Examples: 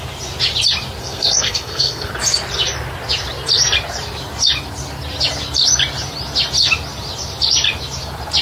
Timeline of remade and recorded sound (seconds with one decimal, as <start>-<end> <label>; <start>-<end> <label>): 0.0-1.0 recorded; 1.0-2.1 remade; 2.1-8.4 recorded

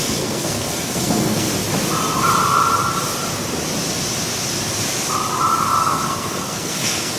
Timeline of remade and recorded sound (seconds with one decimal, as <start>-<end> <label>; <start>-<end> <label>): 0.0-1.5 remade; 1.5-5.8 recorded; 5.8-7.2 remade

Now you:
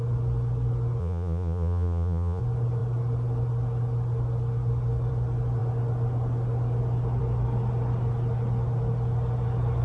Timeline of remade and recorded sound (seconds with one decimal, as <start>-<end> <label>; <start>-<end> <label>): 0.0-1.0 recorded; 1.0-2.4 remade; 2.4-9.8 recorded

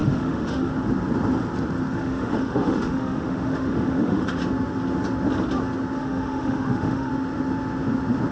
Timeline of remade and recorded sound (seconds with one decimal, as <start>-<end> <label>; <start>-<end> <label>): 0.0-0.7 remade; 0.7-1.9 recorded; 1.9-4.4 remade; 4.4-6.0 recorded; 6.0-7.1 remade; 7.1-8.3 recorded

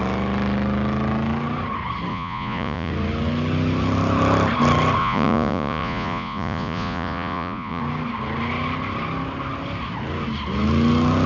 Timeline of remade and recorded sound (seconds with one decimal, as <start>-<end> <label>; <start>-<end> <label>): 0.0-2.1 recorded; 2.1-2.9 remade; 2.9-5.0 recorded; 5.0-7.8 remade; 7.8-11.3 recorded

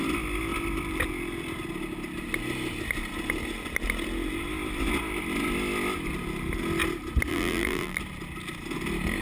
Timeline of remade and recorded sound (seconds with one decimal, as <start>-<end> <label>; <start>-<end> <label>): 0.0-7.3 recorded; 7.3-8.0 remade; 8.0-9.2 recorded

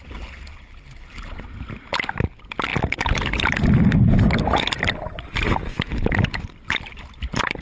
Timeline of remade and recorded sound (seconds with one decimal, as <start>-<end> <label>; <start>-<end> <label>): 0.0-7.6 recorded